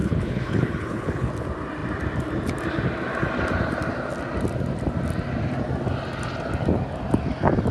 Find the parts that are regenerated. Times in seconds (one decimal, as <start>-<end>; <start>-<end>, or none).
0.0-1.3